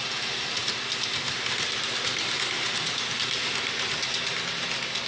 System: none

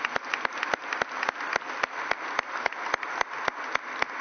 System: none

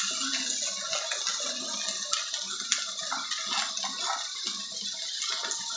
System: none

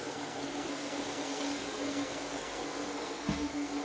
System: codec, SNAC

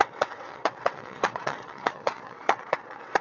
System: vocoder, WaveNeXt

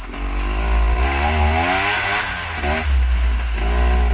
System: none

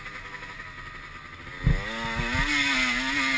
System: none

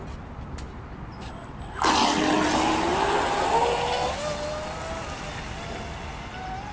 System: none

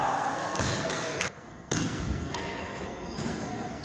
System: codec, SNAC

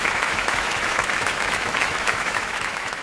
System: autoencoder, DAC-VAE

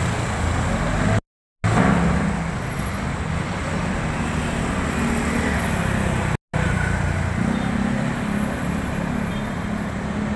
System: none